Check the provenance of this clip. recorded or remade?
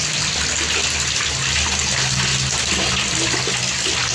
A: recorded